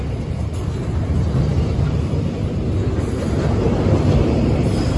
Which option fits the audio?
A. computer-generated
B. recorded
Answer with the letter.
B